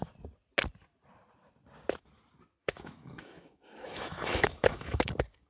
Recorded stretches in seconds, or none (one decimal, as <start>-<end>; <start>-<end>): 0.0-2.6; 5.1-5.5